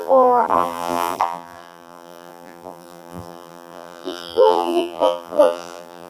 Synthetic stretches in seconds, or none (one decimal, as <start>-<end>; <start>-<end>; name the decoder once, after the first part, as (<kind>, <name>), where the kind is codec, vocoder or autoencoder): 0.0-6.1 (vocoder, BigVGAN v2)